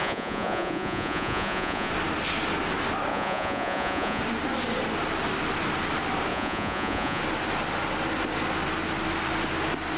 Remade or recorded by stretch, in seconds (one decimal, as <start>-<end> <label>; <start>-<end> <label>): 0.0-1.9 remade; 1.9-3.1 recorded; 3.1-4.2 remade; 4.2-6.3 recorded; 6.3-7.2 remade; 7.2-10.0 recorded